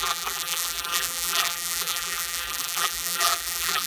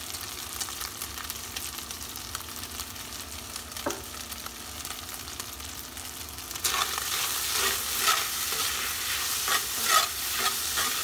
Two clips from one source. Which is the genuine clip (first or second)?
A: second